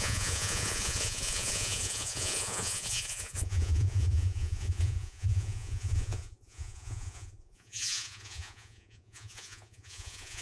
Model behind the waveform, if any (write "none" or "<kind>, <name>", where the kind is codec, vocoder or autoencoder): vocoder, Vocos